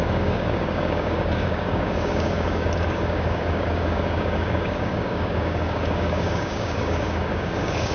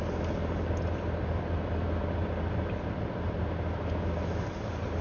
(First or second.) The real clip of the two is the second